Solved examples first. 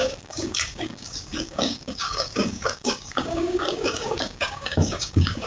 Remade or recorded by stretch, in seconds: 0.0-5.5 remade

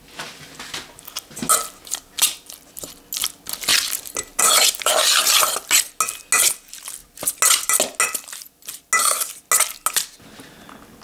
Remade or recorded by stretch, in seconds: 0.0-11.0 recorded

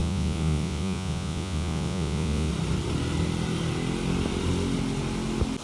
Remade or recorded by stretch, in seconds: 0.0-2.5 remade; 2.5-5.6 recorded